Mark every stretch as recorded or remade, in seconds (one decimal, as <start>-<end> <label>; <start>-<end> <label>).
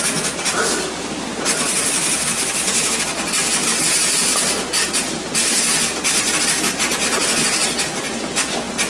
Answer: 0.0-8.9 recorded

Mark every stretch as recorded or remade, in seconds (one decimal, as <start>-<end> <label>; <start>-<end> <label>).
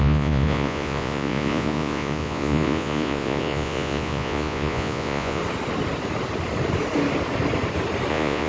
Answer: 0.0-5.4 remade; 5.4-8.1 recorded; 8.1-8.5 remade